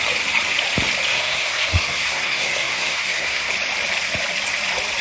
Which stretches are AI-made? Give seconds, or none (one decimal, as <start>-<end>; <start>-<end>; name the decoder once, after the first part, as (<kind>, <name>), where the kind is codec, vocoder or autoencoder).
1.1-3.5 (codec, SNAC)